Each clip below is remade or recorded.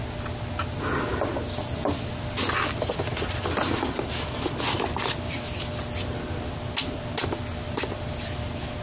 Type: recorded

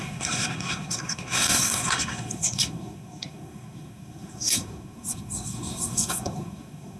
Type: remade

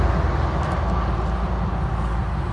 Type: recorded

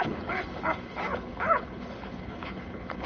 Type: remade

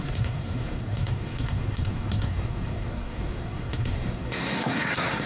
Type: remade